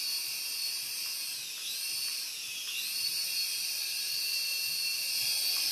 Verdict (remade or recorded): recorded